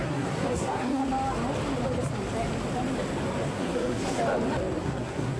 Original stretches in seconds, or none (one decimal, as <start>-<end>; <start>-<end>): 1.0-3.5; 4.2-4.8